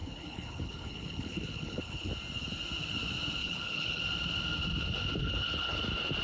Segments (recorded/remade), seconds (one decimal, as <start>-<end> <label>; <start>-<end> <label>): 0.0-2.1 remade; 2.1-3.4 recorded; 3.4-4.0 remade; 4.0-5.2 recorded; 5.2-5.8 remade; 5.8-6.2 recorded